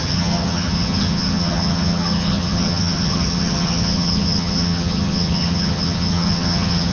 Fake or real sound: fake